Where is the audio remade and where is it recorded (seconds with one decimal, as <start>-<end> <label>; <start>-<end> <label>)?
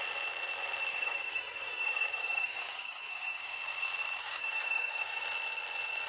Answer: 0.0-0.9 recorded; 0.9-3.5 remade; 3.5-4.2 recorded; 4.2-5.2 remade; 5.2-6.1 recorded